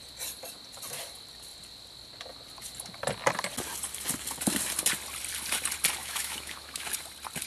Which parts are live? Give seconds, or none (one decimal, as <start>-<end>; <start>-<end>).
0.0-6.0; 6.9-7.5